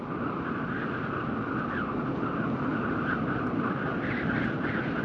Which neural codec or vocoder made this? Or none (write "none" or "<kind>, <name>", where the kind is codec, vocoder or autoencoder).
none